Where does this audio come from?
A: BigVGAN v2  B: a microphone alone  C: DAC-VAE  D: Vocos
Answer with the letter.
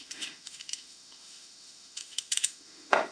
C